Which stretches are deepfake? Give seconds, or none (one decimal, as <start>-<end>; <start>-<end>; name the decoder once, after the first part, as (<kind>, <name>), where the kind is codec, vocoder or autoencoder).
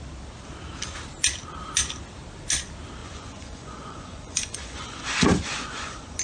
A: 3.0-6.2 (vocoder, Vocos)